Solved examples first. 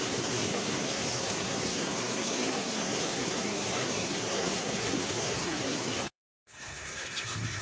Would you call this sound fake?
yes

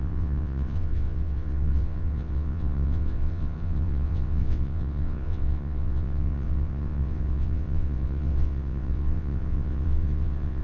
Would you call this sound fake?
yes